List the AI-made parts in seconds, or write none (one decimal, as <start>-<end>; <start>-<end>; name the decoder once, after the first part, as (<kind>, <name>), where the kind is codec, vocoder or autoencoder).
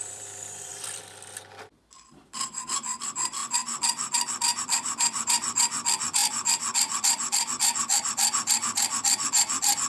0.0-0.7 (vocoder, BigVGAN v2); 2.1-3.4; 4.6-9.9